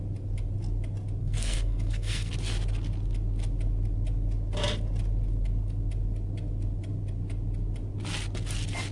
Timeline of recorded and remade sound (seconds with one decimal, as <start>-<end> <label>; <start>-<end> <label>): 0.0-1.2 recorded; 1.2-2.3 remade; 2.3-8.9 recorded